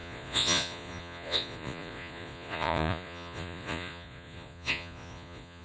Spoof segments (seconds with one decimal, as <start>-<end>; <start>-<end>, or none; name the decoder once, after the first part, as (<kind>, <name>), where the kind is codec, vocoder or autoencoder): 0.0-5.6 (vocoder, Vocos)